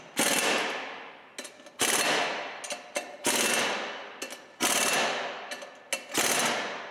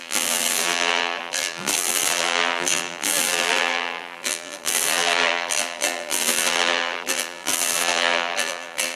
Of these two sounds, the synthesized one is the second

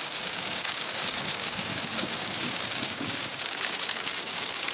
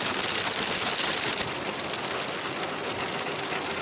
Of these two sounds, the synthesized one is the first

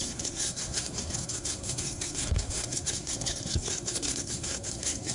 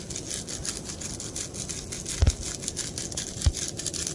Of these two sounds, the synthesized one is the first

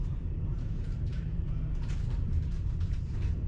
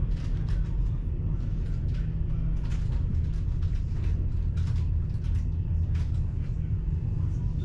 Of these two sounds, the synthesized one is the first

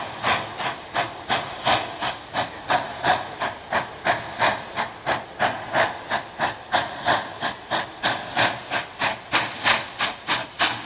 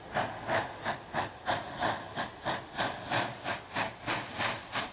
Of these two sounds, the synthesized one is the second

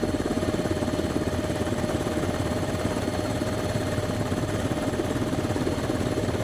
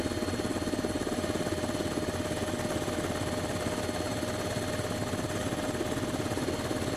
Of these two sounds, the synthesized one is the first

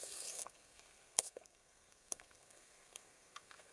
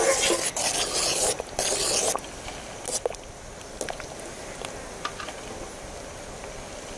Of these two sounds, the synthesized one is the first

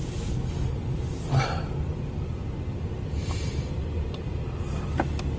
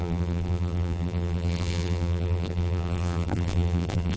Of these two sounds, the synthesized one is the second